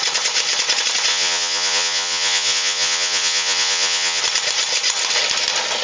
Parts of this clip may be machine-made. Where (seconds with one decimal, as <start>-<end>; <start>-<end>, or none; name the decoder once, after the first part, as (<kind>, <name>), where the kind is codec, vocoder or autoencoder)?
1.1-4.2 (vocoder, Vocos)